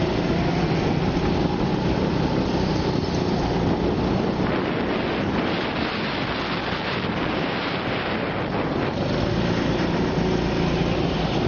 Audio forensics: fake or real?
real